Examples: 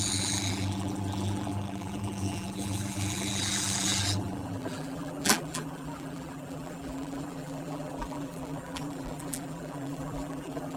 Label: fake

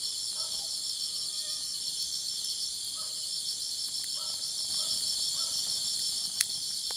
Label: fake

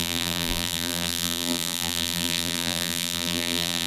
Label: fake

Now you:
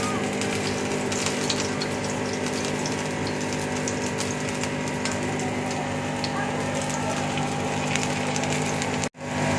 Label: real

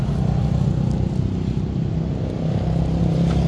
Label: real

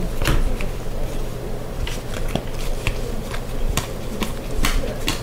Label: fake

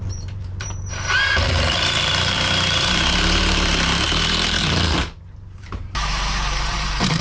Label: fake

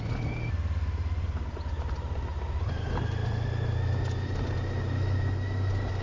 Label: real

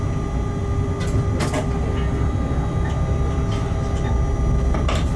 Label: real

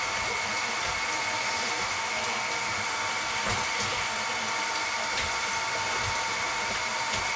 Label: fake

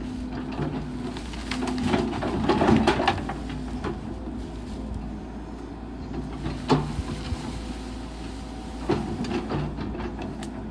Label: real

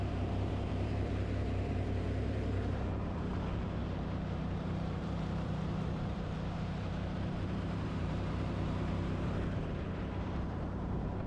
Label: fake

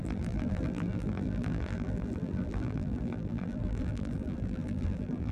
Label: fake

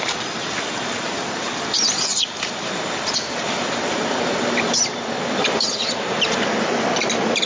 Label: fake